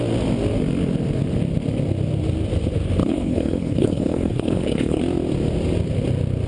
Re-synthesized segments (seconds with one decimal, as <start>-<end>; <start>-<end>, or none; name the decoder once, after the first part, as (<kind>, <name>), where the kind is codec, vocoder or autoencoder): 3.0-5.0 (codec, HILCodec)

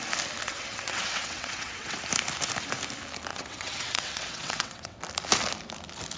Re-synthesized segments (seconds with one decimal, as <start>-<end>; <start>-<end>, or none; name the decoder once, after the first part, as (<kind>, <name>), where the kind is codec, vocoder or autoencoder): 0.4-2.0 (vocoder, WaveNeXt); 3.3-5.0

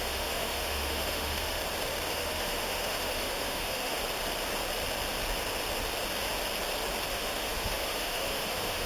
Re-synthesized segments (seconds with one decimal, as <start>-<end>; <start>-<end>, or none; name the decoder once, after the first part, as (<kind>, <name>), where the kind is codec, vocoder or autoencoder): 0.0-1.6 (autoencoder, DAC-VAE); 2.1-4.0; 7.1-8.9

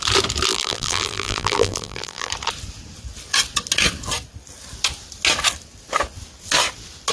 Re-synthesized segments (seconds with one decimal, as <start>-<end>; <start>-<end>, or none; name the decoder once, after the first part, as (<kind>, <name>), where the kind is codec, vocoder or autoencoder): 0.5-2.3 (vocoder, BigVGAN v2)